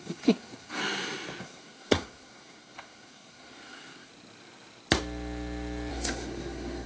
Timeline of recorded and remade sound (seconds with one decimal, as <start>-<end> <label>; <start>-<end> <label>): 0.0-0.8 remade; 0.8-1.4 recorded; 1.4-4.1 remade; 4.1-5.9 recorded; 5.9-6.9 remade